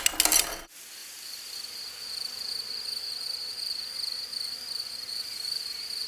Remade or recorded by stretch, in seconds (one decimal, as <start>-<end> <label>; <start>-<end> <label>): 0.0-1.0 recorded; 1.0-1.5 remade; 1.5-6.1 recorded